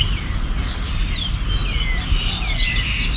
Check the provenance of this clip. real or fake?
real